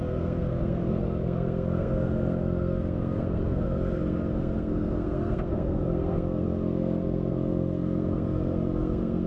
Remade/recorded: remade